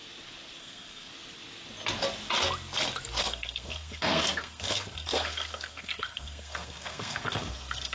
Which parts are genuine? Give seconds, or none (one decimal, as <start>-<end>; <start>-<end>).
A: 0.0-0.6; 1.1-3.2